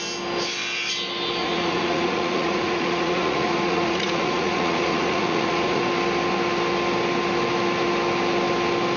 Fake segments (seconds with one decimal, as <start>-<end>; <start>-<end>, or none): 1.4-5.8